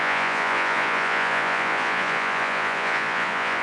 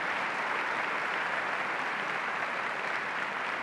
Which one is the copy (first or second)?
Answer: first